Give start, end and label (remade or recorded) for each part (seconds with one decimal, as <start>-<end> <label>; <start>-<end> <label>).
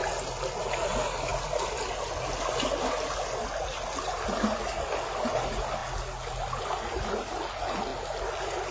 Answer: 0.0-8.7 recorded